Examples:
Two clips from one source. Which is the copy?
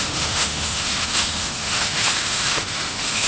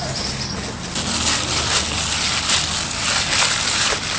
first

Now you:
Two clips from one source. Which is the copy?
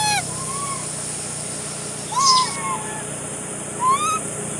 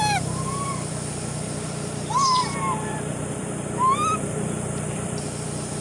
second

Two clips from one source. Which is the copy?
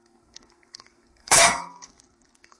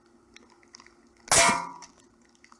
first